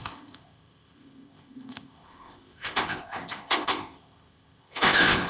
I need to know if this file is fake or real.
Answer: fake